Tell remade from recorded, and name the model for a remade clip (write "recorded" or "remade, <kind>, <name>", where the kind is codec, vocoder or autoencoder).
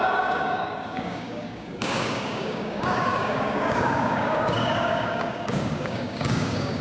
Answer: remade, codec, DAC